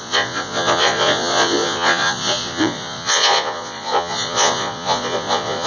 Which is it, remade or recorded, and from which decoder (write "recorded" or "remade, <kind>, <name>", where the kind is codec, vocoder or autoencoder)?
remade, vocoder, Vocos